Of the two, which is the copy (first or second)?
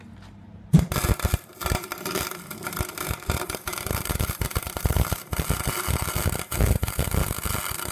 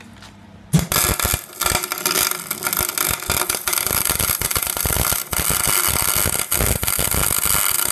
first